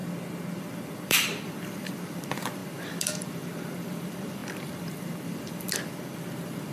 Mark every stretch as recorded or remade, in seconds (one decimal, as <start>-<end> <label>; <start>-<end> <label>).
0.0-0.6 recorded; 0.6-6.7 remade